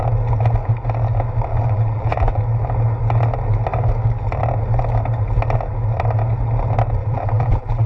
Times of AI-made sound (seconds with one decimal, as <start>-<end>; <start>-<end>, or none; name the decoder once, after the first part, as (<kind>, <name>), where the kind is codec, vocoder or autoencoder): 1.5-2.4 (vocoder, BigVGAN v2); 7.0-7.9